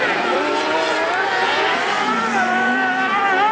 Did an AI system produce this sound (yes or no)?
yes